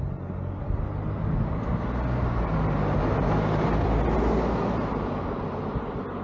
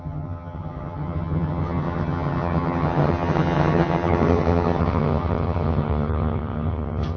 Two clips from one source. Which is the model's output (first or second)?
second